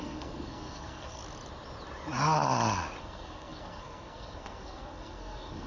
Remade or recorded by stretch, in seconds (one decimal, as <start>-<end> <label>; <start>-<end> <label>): 0.0-1.2 remade; 1.2-3.0 recorded; 3.0-5.7 remade